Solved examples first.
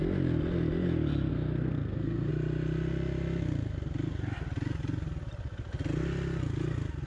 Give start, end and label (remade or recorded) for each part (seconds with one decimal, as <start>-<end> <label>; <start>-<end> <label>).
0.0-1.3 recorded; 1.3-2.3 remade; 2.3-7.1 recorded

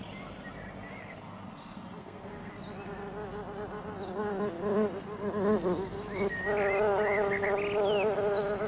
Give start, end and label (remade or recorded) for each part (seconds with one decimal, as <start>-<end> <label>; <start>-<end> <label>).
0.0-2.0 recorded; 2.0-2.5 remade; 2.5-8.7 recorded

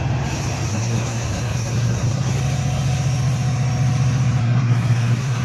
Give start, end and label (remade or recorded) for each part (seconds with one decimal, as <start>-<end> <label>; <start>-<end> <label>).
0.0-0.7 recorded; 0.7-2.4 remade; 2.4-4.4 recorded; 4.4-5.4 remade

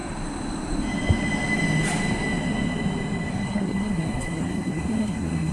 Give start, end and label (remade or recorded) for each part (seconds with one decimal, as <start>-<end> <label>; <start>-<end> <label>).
0.0-3.3 recorded; 3.3-5.5 remade

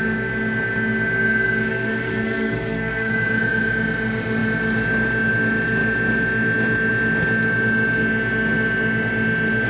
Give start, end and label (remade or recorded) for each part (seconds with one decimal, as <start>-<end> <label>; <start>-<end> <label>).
0.0-1.7 recorded; 1.7-3.1 remade; 3.1-9.7 recorded